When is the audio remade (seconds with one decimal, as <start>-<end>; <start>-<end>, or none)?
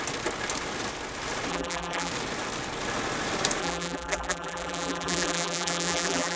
1.5-2.1; 3.6-6.4